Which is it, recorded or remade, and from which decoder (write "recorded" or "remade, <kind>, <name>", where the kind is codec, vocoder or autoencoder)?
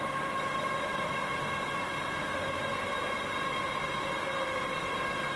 recorded